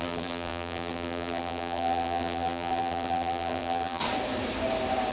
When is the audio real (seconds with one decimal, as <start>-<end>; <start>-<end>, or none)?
4.0-5.1